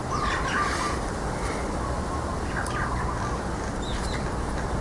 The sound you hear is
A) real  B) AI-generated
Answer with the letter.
A